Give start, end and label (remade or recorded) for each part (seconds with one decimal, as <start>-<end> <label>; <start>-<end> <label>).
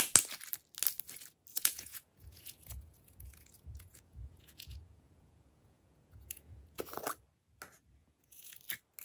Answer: 0.0-1.5 recorded; 1.5-6.8 remade; 6.8-8.0 recorded; 8.0-8.6 remade; 8.6-9.0 recorded